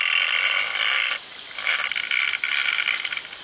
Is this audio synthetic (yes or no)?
no